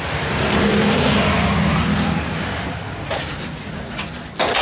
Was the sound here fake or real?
real